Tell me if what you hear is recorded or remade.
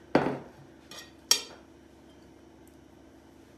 recorded